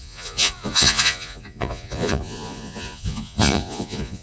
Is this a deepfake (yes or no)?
yes